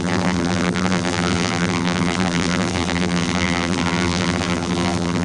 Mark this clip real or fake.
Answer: fake